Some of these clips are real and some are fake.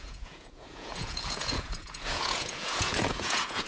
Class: fake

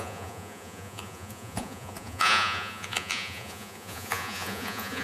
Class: fake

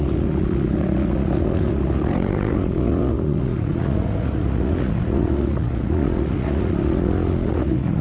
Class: fake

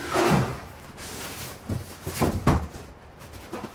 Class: real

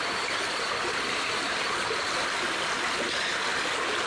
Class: real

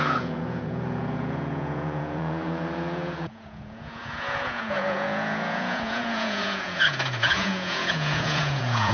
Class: fake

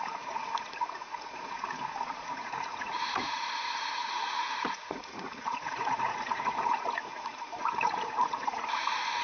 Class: fake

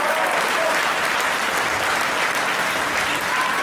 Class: real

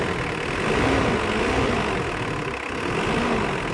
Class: real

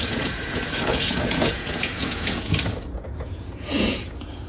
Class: fake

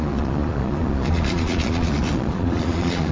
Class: fake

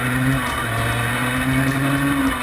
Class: real